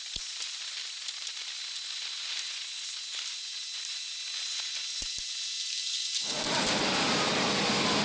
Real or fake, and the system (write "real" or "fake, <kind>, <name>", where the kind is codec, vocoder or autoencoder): real